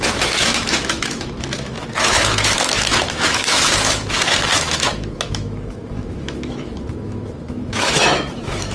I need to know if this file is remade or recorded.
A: remade